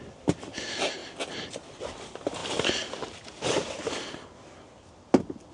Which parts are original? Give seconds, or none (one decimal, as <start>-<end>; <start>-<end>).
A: 0.0-5.5